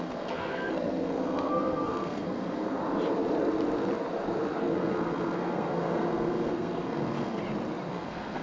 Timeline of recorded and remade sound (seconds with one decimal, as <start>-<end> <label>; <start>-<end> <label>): 0.0-2.8 remade; 2.8-4.6 recorded; 4.6-7.4 remade; 7.4-7.9 recorded; 7.9-8.4 remade